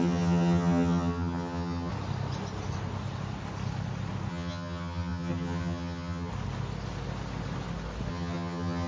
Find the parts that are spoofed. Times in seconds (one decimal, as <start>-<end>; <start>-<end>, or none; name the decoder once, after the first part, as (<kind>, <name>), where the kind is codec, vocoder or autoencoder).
0.0-1.9 (vocoder, HiFi-GAN); 4.3-6.3; 8.1-8.9